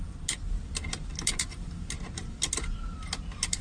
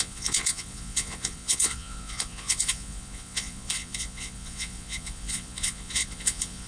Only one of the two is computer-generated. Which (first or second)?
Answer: second